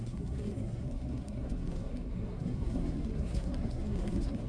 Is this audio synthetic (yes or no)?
yes